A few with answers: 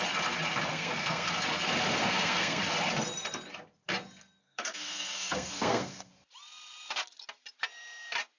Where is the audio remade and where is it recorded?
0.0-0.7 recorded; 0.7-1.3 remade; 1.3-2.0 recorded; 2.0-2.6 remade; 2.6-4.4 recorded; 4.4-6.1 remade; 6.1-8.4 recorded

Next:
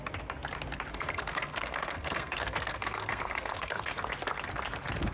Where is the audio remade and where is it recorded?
0.0-0.9 recorded; 0.9-4.0 remade; 4.0-5.1 recorded

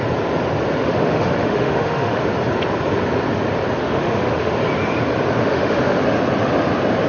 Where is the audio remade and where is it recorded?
0.0-0.8 recorded; 0.8-2.2 remade; 2.2-3.8 recorded; 3.8-4.5 remade; 4.5-5.4 recorded; 5.4-6.0 remade; 6.0-7.1 recorded

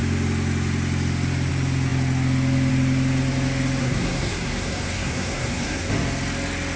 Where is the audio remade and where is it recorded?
0.0-3.8 recorded; 3.8-5.9 remade; 5.9-6.8 recorded

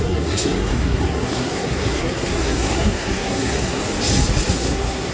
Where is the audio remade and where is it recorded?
0.0-3.8 remade; 3.8-4.5 recorded; 4.5-5.1 remade

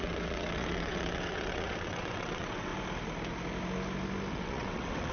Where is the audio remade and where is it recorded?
0.0-2.7 remade; 2.7-4.3 recorded; 4.3-5.1 remade